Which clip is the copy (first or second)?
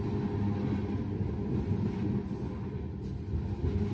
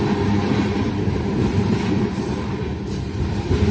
second